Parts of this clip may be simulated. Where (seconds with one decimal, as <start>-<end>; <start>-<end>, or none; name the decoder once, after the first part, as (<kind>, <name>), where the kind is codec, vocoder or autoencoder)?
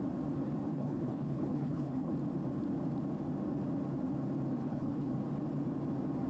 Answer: 0.7-2.1 (codec, HILCodec); 4.6-5.1